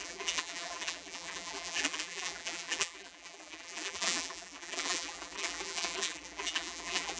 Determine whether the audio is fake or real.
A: fake